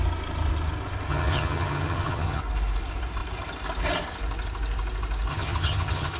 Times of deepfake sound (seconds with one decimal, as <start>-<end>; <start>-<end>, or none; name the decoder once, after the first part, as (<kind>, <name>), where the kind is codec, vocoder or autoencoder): 1.1-2.4 (vocoder, HiFi-GAN); 5.3-6.2